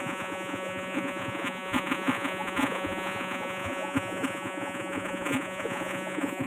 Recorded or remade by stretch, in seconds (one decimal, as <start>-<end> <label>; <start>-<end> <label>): 0.0-6.5 remade